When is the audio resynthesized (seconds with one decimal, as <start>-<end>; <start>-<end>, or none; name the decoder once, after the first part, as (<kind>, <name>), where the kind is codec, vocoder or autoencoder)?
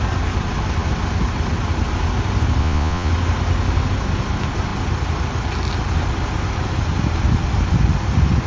2.6-3.1 (vocoder, Vocos)